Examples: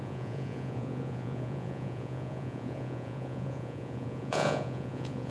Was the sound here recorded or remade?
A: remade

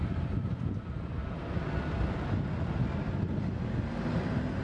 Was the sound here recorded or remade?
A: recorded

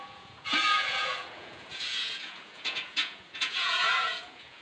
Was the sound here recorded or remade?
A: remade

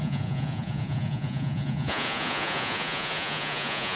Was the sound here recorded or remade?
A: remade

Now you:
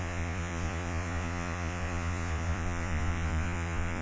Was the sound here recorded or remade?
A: remade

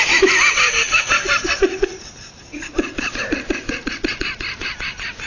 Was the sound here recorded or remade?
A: recorded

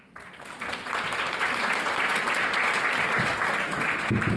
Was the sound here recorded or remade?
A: recorded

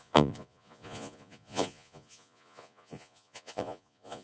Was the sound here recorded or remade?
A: remade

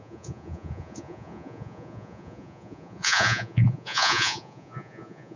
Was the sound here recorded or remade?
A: remade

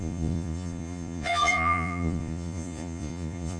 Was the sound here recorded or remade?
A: remade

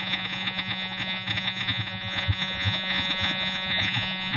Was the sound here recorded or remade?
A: remade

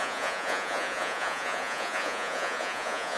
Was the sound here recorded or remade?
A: remade